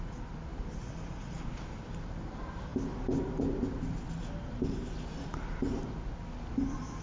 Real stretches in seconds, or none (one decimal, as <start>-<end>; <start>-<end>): 0.0-7.0